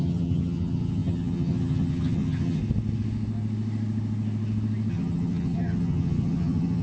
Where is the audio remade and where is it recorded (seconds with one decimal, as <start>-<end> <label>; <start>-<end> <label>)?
0.0-2.6 remade; 2.6-4.9 recorded; 4.9-6.8 remade